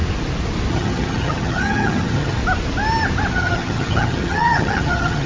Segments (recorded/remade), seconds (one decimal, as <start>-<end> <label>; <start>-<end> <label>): 0.0-0.7 recorded; 0.7-2.4 remade; 2.4-3.3 recorded; 3.3-5.3 remade